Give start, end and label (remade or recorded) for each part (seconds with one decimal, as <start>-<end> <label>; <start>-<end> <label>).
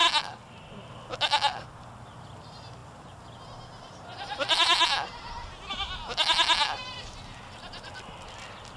0.0-8.8 recorded